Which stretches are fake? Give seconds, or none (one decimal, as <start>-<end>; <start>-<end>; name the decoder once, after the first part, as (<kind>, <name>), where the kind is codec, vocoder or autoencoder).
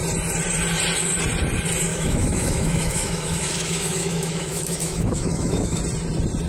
1.9-5.8 (autoencoder, DAC-VAE)